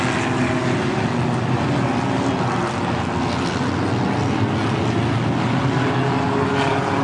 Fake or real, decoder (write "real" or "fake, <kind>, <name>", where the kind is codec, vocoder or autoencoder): real